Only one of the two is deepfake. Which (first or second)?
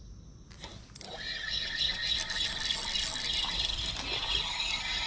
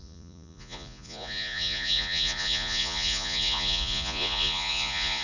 second